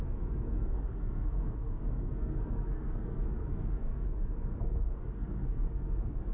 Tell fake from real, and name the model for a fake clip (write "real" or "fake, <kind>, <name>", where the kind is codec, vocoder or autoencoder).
fake, codec, SNAC